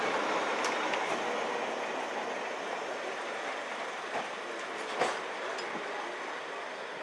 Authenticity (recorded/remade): recorded